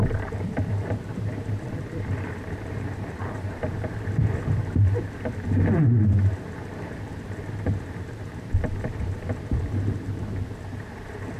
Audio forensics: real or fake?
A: fake